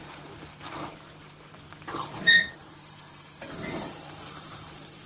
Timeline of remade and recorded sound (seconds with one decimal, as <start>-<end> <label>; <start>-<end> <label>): 0.0-5.1 remade